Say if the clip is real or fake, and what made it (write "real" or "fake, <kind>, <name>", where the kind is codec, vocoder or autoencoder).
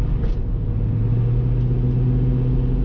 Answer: real